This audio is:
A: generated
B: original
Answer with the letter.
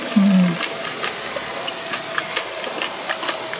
B